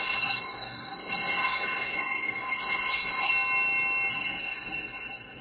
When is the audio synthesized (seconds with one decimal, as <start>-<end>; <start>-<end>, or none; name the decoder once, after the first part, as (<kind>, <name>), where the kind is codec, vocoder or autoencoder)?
0.0-3.3 (codec, SNAC); 4.1-5.4